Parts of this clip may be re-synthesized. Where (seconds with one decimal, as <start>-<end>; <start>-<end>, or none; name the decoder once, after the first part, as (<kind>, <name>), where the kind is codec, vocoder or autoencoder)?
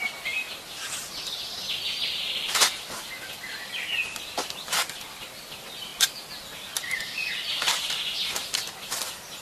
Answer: none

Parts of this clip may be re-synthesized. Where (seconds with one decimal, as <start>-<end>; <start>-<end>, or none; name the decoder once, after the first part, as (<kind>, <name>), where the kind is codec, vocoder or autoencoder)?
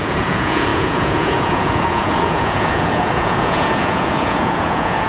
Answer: 0.0-5.1 (vocoder, Vocos)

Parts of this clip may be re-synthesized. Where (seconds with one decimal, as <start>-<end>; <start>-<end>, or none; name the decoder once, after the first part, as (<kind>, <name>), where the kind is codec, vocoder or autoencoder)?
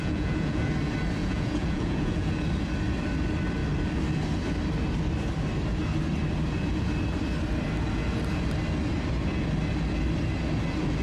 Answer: 0.0-0.7 (vocoder, Vocos); 1.2-2.3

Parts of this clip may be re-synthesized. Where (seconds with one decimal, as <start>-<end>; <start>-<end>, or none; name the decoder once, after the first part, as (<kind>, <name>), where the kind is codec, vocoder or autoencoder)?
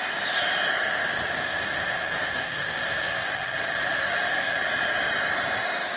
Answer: 1.4-4.7 (autoencoder, DAC-VAE)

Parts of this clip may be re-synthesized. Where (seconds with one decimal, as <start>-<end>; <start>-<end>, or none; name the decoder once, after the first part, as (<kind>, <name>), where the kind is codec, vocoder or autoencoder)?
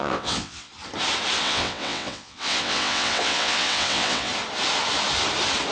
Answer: 0.0-0.7 (vocoder, WaveNeXt); 1.4-4.3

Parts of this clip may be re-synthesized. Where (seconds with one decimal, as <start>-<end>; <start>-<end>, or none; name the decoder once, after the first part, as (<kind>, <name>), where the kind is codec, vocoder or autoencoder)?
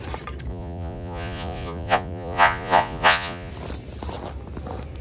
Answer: 0.5-3.5 (vocoder, Vocos)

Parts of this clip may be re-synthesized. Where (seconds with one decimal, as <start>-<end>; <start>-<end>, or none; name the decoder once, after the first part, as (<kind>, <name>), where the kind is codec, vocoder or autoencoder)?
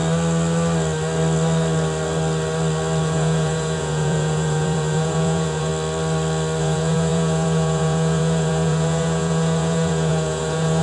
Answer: 3.0-5.7 (vocoder, Vocos); 6.6-10.8